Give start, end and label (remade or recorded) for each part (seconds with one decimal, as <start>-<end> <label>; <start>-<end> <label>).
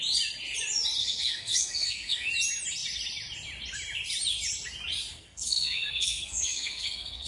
0.0-1.0 recorded; 1.0-2.3 remade; 2.3-5.1 recorded; 5.1-7.3 remade